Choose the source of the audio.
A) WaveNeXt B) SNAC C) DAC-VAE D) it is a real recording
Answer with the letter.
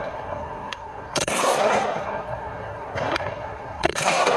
B